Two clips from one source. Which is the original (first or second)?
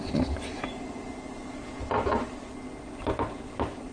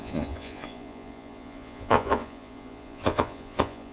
first